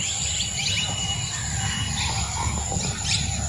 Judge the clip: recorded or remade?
recorded